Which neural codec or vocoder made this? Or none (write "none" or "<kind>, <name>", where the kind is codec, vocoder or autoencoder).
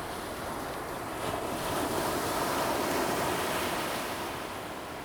none